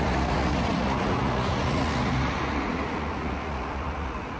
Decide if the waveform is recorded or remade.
remade